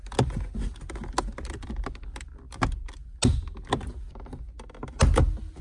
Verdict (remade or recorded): recorded